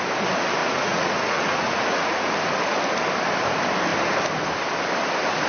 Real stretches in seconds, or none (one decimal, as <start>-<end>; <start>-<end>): 0.0-0.6; 2.3-5.5